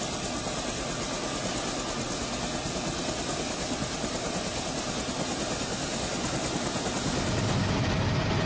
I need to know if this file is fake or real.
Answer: real